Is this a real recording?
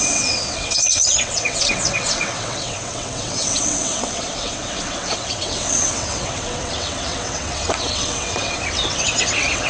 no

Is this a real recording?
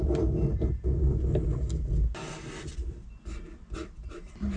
yes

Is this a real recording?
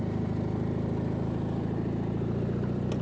yes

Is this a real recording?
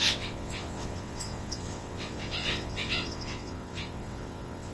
no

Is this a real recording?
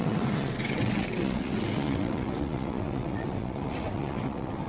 no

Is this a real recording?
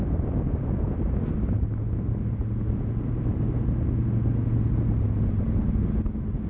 yes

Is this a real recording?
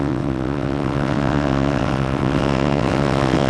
no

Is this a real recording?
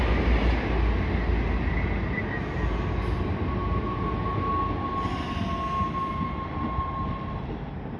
yes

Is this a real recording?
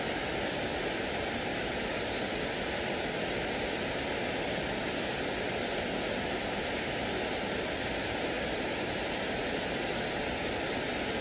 yes